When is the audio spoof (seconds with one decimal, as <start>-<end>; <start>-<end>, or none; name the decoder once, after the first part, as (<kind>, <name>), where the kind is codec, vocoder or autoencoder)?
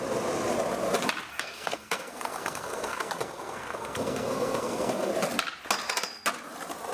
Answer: 1.3-5.1 (codec, SNAC)